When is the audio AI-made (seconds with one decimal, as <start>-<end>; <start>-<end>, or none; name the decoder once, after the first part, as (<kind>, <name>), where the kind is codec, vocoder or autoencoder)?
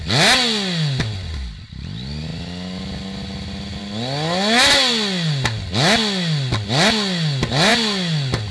none